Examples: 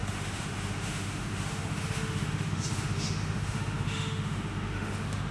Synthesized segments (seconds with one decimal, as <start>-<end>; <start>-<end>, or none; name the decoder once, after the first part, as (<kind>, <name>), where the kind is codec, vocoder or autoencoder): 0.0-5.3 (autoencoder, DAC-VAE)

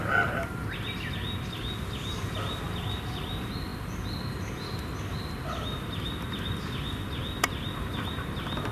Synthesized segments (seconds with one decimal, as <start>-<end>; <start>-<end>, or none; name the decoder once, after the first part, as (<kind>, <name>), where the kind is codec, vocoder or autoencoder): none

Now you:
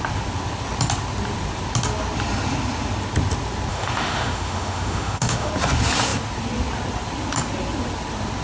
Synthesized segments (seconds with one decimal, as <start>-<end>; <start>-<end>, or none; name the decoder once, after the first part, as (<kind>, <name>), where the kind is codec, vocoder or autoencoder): 3.7-5.5 (autoencoder, DAC-VAE)